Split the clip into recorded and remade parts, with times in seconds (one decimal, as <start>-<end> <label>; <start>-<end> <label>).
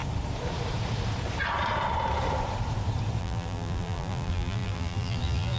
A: 0.0-3.2 recorded; 3.2-5.6 remade